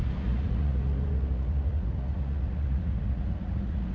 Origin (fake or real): fake